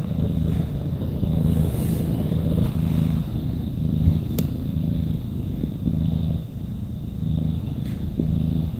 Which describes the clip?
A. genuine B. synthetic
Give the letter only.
B